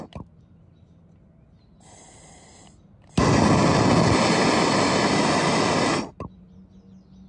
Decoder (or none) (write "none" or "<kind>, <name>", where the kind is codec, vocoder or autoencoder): none